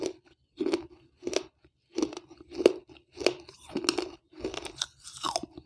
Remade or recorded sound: recorded